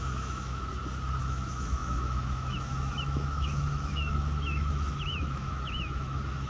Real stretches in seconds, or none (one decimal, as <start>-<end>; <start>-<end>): 0.7-1.2